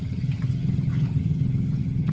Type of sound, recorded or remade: remade